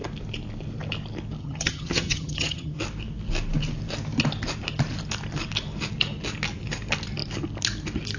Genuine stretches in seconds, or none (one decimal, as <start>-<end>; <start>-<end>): 0.0-1.4; 2.8-8.2